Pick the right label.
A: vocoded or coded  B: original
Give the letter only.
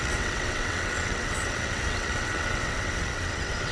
A